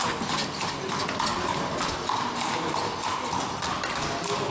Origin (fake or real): real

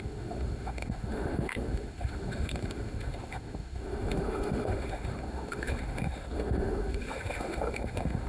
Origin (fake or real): fake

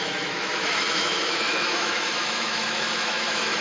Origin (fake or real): fake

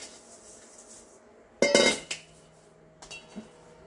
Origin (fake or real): real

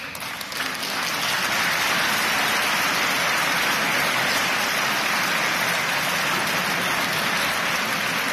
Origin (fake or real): real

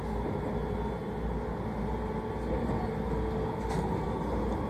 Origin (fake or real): real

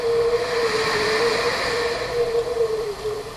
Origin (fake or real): real